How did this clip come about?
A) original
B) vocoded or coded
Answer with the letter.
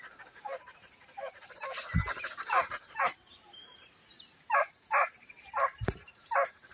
B